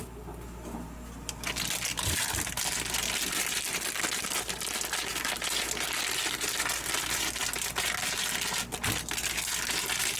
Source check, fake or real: real